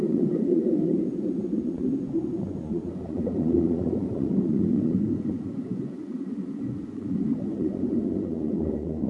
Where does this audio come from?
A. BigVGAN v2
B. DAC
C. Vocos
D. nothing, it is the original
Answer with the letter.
C